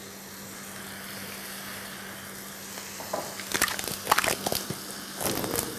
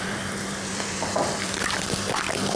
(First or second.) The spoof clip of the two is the second